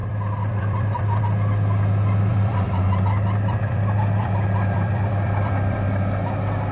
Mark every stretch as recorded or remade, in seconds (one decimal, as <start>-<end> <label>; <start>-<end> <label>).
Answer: 0.0-1.2 remade; 1.2-2.3 recorded; 2.3-5.9 remade; 5.9-6.7 recorded